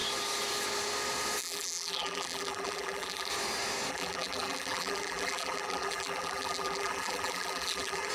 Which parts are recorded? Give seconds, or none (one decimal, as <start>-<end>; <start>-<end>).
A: 0.0-1.4; 3.3-3.9